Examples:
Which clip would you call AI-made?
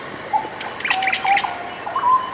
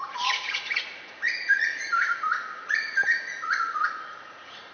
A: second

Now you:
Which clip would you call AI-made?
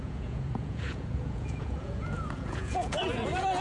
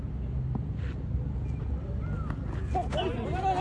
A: first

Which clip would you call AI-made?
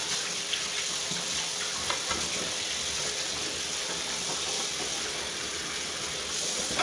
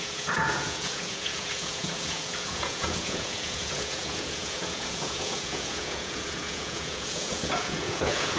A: second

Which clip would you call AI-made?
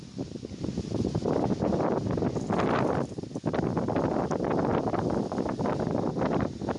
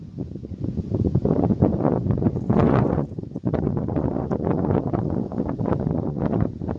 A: second